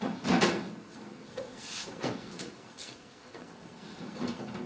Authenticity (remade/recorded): remade